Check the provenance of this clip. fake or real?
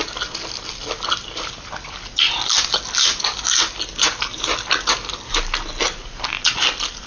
real